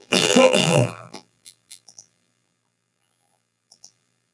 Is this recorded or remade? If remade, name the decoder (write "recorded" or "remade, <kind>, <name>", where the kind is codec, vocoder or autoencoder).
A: remade, vocoder, BigVGAN v2